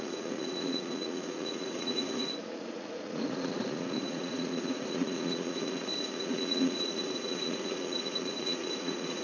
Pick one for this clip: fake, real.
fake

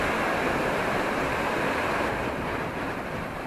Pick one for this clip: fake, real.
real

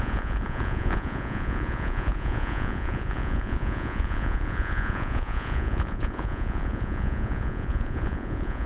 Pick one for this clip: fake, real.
fake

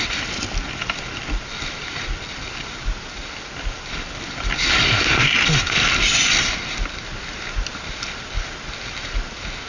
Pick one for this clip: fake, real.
real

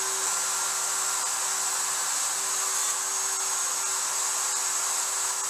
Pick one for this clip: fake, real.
real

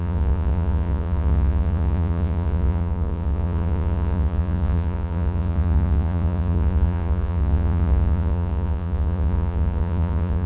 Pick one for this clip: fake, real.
fake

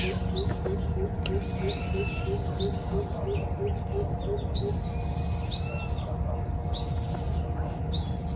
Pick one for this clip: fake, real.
real